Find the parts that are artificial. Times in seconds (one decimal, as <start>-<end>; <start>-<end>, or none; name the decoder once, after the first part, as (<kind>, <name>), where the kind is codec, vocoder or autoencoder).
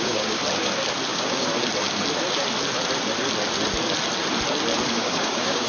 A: 0.0-0.4 (codec, DAC); 1.1-1.5; 4.9-5.7